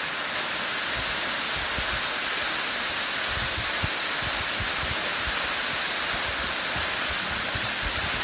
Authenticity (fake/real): real